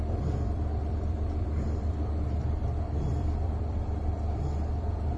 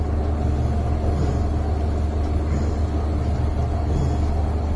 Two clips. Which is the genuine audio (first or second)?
second